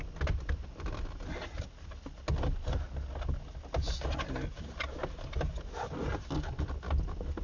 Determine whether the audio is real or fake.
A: real